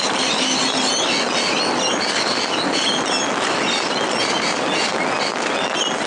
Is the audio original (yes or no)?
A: yes